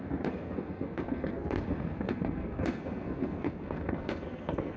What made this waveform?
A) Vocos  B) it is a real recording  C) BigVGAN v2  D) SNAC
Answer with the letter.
D